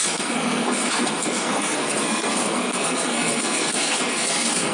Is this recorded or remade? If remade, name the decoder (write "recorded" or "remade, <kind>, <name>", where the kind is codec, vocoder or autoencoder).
remade, codec, SNAC